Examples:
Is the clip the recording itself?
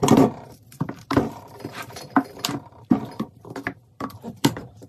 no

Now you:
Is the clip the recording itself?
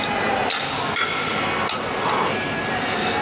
yes